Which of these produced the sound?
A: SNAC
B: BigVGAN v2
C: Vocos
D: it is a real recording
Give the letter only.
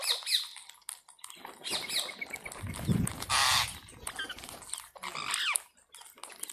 D